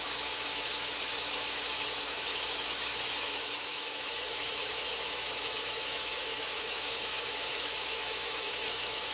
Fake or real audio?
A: fake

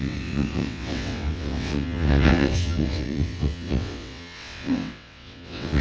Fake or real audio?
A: fake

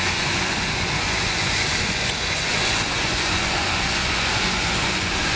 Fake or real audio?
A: fake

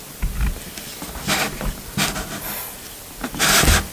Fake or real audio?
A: real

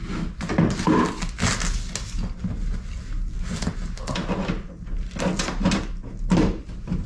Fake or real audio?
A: real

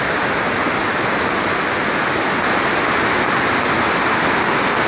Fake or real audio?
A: real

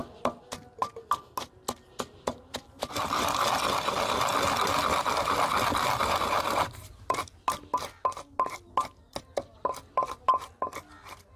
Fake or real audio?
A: real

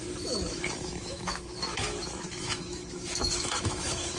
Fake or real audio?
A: fake